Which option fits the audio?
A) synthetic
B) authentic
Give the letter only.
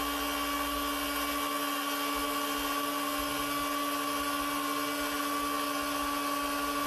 B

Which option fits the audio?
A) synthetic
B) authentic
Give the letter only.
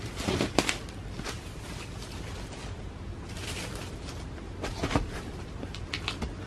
B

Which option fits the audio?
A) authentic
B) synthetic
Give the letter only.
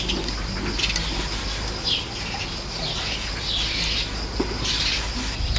A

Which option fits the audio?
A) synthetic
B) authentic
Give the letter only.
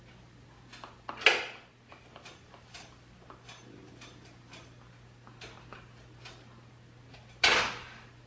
B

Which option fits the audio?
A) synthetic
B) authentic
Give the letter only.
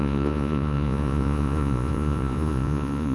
A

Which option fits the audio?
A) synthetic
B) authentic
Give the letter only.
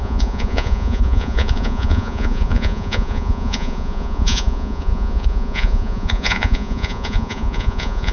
A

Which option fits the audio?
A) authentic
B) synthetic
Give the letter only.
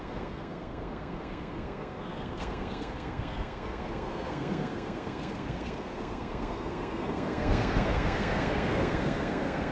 B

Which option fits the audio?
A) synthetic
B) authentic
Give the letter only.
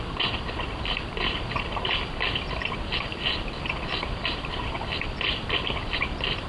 B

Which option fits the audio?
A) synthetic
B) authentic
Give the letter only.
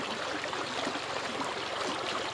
B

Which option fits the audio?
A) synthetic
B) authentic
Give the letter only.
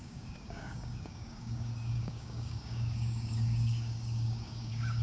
A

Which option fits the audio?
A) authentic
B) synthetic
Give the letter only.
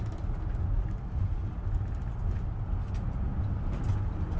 A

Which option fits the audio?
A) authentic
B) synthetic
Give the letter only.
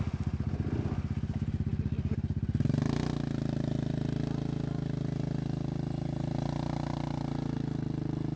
A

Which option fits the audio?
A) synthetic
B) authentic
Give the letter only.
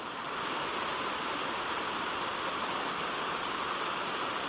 B